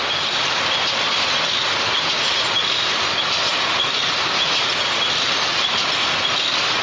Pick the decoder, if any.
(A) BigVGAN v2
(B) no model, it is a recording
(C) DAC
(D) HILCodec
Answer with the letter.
B